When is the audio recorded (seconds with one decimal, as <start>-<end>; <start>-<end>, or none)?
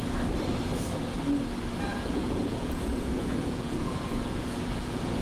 0.0-1.9